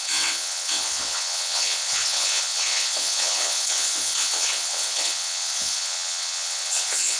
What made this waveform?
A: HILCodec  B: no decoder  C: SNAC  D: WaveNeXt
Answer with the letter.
D